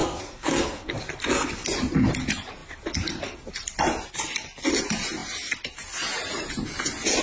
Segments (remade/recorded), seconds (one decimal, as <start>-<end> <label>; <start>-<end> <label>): 0.0-0.9 remade; 0.9-7.2 recorded